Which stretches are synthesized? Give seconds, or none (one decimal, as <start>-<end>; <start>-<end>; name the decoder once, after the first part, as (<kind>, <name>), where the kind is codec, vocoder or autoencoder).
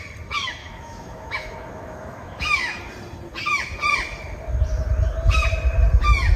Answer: 0.6-2.8 (autoencoder, DAC-VAE)